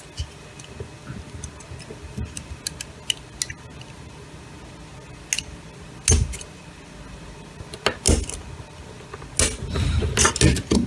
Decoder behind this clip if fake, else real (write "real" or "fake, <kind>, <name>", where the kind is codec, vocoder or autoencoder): real